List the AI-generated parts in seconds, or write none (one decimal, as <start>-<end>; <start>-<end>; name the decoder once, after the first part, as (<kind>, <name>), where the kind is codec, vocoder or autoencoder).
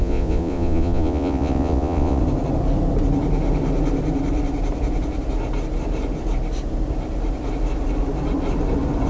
0.0-2.2 (vocoder, Vocos)